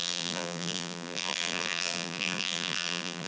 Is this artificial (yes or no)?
yes